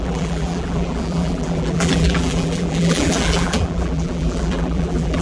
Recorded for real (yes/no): no